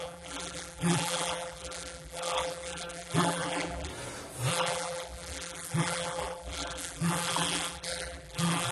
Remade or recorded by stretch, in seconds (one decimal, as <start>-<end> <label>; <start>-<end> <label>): 0.0-3.9 remade; 3.9-4.5 recorded; 4.5-8.7 remade

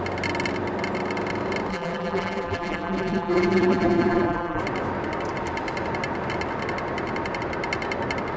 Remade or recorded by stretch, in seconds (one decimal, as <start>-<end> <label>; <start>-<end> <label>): 0.0-1.7 recorded; 1.7-4.6 remade; 4.6-8.4 recorded

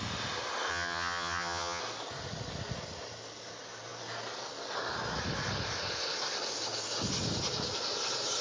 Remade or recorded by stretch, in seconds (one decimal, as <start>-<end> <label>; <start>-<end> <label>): 0.0-0.7 recorded; 0.7-1.8 remade; 1.8-8.4 recorded

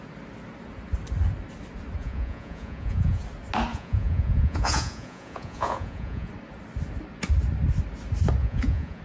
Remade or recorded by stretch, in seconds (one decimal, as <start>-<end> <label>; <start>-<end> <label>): 0.0-2.0 recorded; 2.0-3.2 remade; 3.2-3.7 recorded; 3.7-6.3 remade; 6.3-8.4 recorded; 8.4-9.0 remade

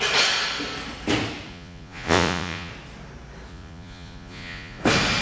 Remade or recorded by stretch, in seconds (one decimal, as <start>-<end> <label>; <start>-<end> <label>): 0.0-1.5 recorded; 1.5-2.7 remade; 2.7-3.5 recorded; 3.5-4.8 remade; 4.8-5.2 recorded

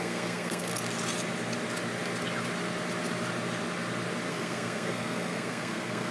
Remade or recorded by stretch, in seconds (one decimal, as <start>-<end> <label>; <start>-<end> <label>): 0.0-0.7 remade; 0.7-4.3 recorded; 4.3-6.1 remade

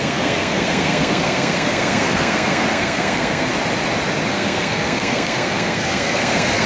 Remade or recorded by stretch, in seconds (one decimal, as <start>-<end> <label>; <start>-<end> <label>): 0.0-3.5 remade; 3.5-4.3 recorded; 4.3-6.7 remade